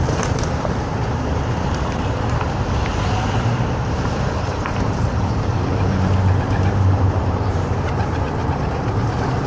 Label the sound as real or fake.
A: fake